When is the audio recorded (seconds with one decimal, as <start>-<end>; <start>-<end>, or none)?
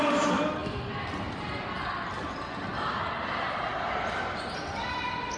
0.0-5.4